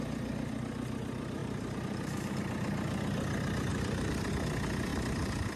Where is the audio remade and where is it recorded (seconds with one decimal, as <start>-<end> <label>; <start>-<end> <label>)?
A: 0.0-1.4 recorded; 1.4-2.4 remade; 2.4-3.7 recorded; 3.7-4.3 remade; 4.3-5.6 recorded